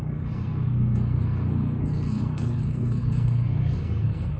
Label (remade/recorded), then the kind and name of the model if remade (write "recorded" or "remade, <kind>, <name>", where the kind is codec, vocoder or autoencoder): remade, codec, SNAC